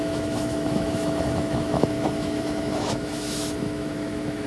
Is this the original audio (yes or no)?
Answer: no